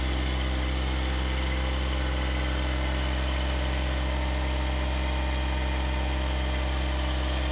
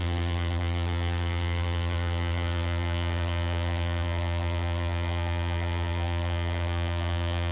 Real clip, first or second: first